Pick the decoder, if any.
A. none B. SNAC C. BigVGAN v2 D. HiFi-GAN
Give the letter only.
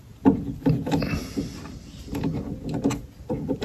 A